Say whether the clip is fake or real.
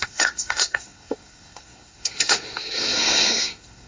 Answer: fake